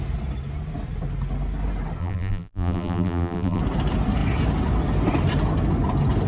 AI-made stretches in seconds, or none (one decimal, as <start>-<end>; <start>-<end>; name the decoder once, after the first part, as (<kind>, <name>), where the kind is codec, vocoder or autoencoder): 2.0-3.6 (vocoder, BigVGAN v2)